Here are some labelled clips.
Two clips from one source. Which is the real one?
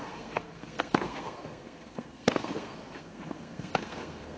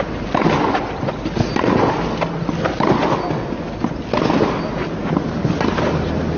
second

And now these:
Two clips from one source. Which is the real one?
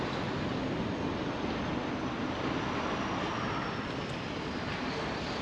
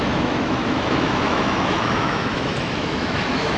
first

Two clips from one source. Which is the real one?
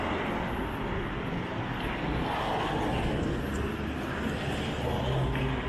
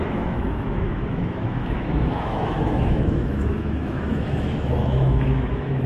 first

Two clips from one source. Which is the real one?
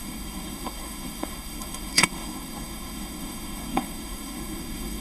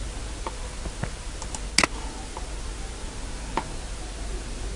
second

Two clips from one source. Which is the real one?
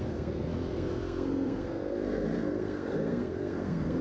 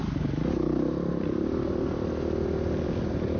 second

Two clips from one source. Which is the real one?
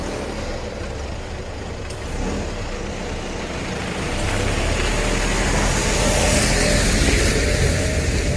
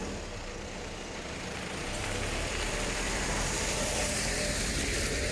first